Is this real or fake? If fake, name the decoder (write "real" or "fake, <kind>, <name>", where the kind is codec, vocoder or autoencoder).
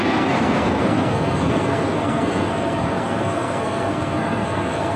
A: fake, codec, SNAC